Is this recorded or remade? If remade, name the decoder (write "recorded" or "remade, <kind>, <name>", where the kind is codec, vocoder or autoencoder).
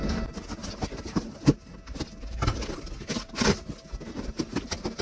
recorded